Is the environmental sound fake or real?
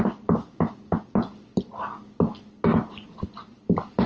real